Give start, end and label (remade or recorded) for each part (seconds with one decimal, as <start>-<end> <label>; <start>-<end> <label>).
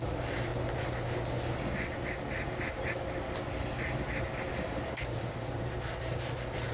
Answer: 0.0-0.5 remade; 0.5-4.5 recorded; 4.5-6.7 remade